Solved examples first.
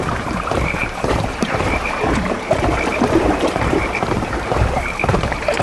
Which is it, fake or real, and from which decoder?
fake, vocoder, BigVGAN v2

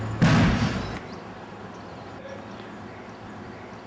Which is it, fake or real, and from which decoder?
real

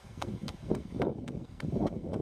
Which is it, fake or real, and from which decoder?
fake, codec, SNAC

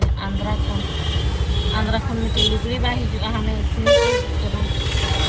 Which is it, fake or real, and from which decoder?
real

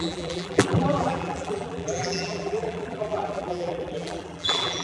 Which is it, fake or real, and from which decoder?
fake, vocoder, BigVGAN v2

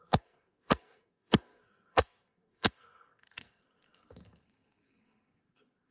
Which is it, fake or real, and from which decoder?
fake, codec, SNAC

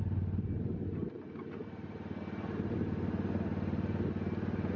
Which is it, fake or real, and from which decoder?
real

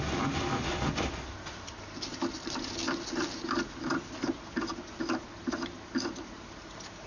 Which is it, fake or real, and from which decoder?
real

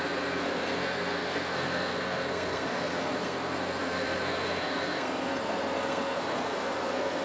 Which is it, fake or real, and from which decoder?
fake, codec, SNAC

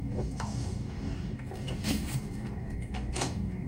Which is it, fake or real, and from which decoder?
fake, codec, DAC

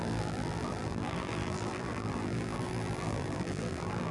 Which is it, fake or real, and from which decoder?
fake, vocoder, BigVGAN v2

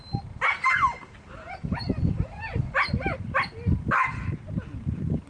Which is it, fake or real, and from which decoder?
real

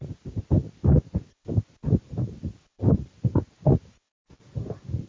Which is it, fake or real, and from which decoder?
real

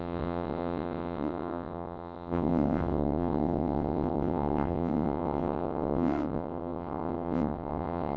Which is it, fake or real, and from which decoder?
fake, vocoder, WaveNeXt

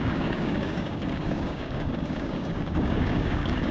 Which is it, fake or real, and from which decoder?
fake, codec, DAC